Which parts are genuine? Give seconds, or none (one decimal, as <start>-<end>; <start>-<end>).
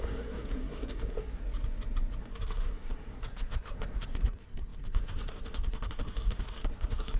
1.4-2.2